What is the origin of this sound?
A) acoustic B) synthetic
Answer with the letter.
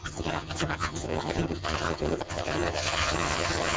B